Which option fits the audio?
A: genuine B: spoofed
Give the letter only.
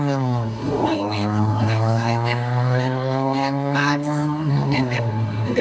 B